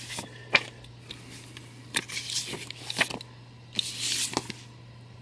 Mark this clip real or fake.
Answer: real